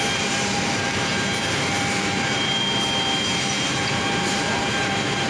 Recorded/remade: remade